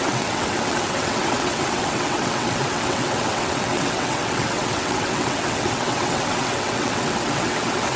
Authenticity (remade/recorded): remade